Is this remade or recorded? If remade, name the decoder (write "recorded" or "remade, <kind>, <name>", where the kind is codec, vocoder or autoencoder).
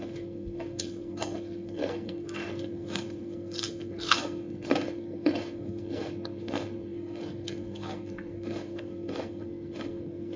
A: remade, codec, SNAC